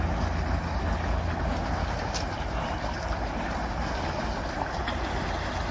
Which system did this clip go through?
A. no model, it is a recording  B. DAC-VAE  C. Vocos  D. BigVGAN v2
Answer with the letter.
A